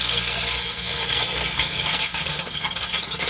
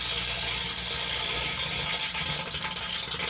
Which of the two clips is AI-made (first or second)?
first